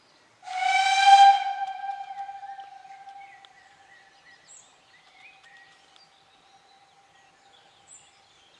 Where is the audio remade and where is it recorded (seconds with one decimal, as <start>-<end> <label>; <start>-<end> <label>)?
0.0-8.6 recorded